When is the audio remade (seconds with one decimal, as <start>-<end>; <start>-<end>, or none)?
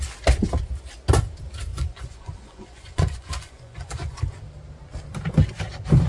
1.7-4.2